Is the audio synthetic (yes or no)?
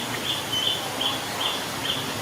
no